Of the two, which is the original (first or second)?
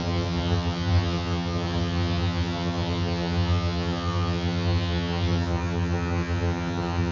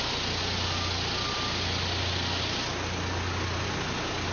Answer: second